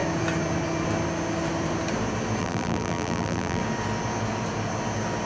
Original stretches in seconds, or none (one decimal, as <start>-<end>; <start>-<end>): 0.0-2.4; 3.6-5.3

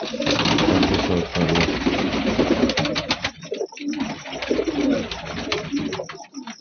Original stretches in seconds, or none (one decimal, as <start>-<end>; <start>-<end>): 0.0-1.3; 5.3-6.6

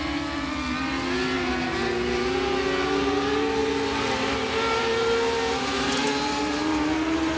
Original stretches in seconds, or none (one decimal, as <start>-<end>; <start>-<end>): 0.0-7.4

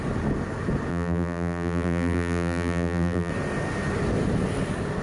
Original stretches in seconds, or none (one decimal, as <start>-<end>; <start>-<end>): 0.0-0.9; 3.3-5.0

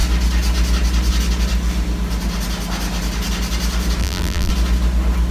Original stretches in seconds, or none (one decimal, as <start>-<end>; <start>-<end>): 0.0-4.0; 4.5-5.3